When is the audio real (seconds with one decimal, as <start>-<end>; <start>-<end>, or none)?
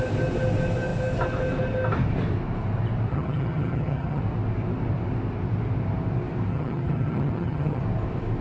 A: 0.0-3.1; 4.2-6.5; 7.8-8.4